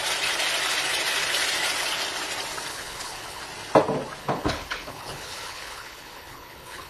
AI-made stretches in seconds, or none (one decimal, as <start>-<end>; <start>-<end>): 2.7-3.4; 4.2-6.9

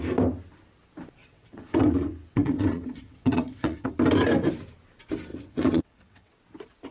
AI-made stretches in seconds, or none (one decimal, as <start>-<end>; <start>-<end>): 1.2-3.9; 5.3-6.3

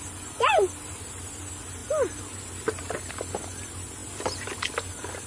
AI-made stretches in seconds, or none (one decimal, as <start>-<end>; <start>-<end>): none

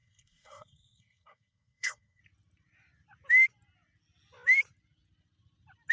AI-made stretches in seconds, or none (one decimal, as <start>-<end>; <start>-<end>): 0.0-2.2

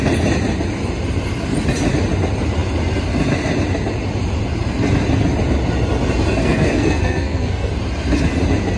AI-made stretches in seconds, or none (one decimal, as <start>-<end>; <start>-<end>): 6.4-7.7

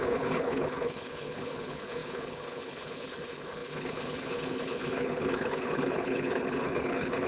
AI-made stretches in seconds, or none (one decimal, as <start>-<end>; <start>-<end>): 0.0-7.3